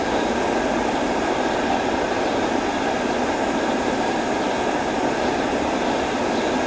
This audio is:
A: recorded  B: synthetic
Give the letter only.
A